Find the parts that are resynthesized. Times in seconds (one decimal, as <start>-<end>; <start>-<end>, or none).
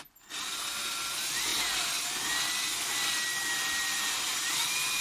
none